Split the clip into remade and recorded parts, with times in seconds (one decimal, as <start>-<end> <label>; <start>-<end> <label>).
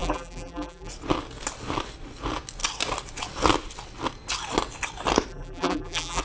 0.0-0.9 remade; 0.9-5.3 recorded; 5.3-6.2 remade